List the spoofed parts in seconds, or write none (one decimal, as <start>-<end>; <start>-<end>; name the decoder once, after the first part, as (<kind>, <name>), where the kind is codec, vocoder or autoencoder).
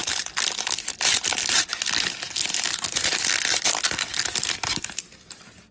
0.0-0.6 (vocoder, BigVGAN v2); 2.4-3.7